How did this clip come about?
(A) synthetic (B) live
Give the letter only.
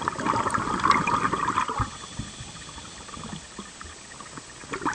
B